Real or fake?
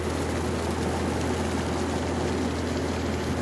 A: real